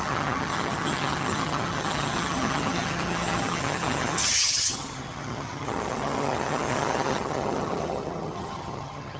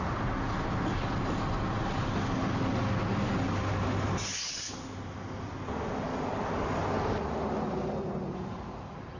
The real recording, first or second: second